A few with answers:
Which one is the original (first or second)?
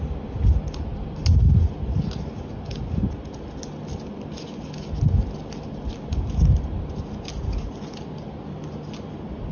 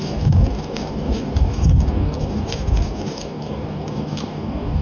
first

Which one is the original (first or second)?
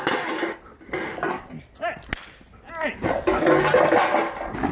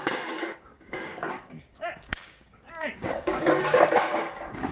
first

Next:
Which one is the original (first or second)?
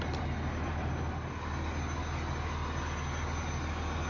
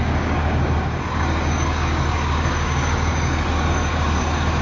first